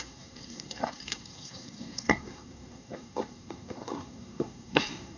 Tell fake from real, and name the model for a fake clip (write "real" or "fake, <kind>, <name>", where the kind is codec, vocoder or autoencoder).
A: fake, codec, SNAC